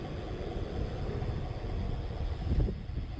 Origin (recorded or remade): recorded